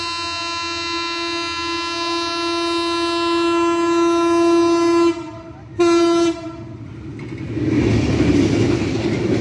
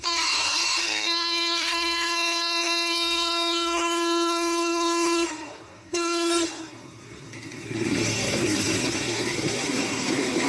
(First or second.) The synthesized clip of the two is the second